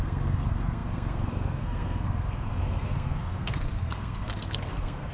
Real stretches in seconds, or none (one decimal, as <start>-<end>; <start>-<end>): none